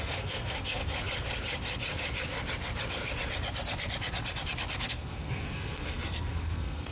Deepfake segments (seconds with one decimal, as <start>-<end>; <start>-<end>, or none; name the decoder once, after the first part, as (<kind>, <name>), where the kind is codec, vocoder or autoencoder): 0.0-0.8 (codec, SNAC); 4.9-6.9